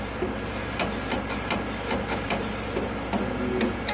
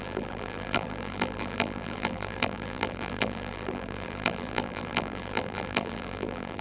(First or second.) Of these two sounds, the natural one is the first